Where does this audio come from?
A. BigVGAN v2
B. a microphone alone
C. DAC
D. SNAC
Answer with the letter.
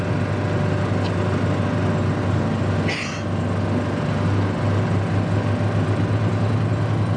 B